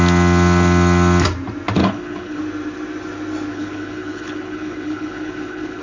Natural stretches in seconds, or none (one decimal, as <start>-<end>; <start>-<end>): 0.0-1.8; 2.4-3.5